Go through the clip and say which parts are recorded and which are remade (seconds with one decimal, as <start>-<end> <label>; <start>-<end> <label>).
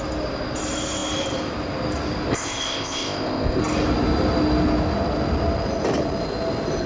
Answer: 0.0-2.3 recorded; 2.3-3.6 remade; 3.6-6.9 recorded